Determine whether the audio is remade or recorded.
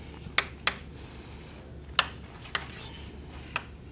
recorded